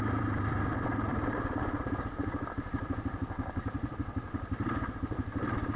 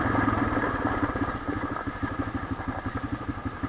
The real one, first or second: second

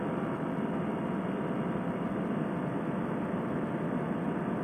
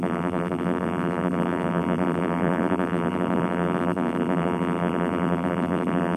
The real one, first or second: first